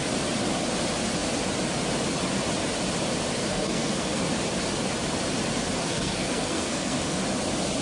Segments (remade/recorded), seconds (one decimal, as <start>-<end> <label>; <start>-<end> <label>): 0.0-3.4 recorded; 3.4-4.2 remade; 4.2-5.8 recorded; 5.8-7.2 remade; 7.2-7.8 recorded